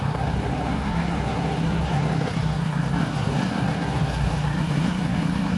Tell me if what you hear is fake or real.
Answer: fake